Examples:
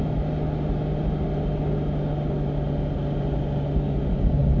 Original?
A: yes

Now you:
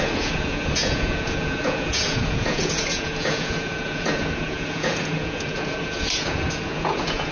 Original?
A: no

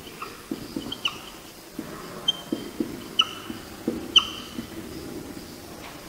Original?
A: yes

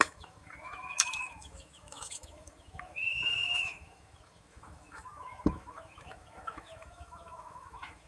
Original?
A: no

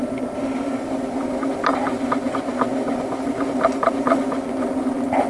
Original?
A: yes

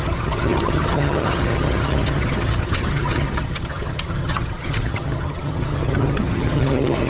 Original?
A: no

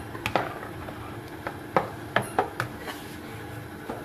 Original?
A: yes